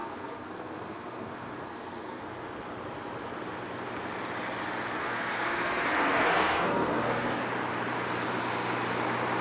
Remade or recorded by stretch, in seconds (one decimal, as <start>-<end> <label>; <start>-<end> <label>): 0.0-2.2 remade; 2.2-5.0 recorded; 5.0-7.4 remade; 7.4-9.4 recorded